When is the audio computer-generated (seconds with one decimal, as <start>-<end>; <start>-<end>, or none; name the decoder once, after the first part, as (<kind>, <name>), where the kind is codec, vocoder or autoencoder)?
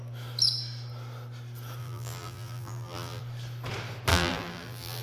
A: 1.8-3.2 (vocoder, BigVGAN v2); 4.1-5.0